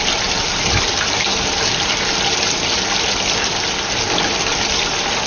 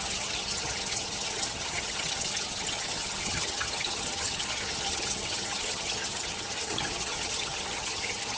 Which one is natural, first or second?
first